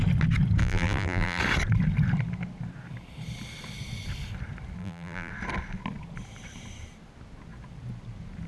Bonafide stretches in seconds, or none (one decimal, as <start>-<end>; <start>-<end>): 0.0-0.6; 1.4-4.8; 5.3-8.5